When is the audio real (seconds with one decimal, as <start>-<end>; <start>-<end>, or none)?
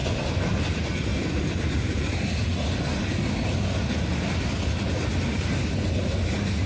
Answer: 0.6-1.1; 2.2-6.7